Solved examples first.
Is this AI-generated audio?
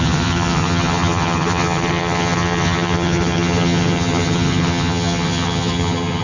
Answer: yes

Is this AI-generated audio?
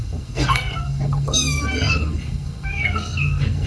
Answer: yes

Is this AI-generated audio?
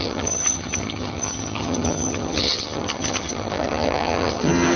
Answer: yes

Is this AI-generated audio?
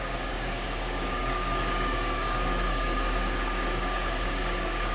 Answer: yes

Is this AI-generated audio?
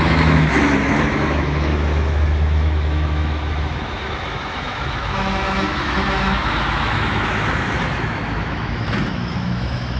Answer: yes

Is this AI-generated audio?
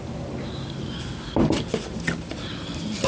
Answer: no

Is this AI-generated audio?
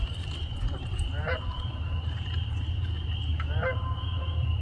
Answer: yes